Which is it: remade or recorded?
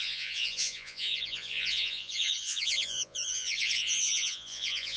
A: remade